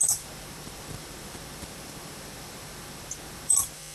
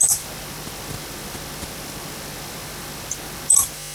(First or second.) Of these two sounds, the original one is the second